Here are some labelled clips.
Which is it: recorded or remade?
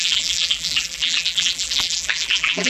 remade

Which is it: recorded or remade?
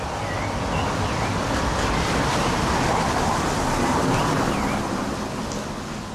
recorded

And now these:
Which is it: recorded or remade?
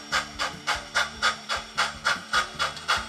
remade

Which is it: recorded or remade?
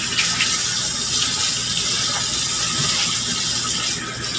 recorded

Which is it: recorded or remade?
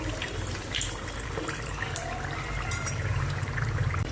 remade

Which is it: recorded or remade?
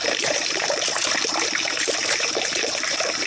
remade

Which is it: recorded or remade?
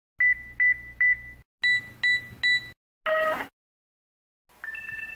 recorded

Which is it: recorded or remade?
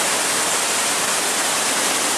recorded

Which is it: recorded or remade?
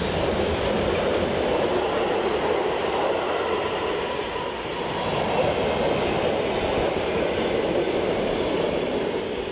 recorded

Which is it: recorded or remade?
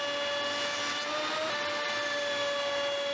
recorded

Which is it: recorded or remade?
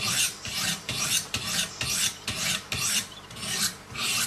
remade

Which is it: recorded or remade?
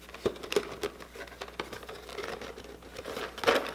recorded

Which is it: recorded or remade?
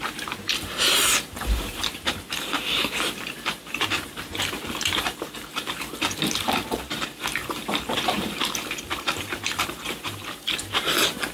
remade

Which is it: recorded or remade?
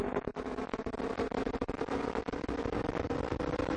recorded